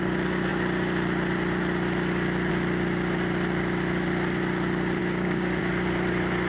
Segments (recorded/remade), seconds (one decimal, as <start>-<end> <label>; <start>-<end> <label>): 0.0-5.0 recorded; 5.0-5.6 remade; 5.6-6.5 recorded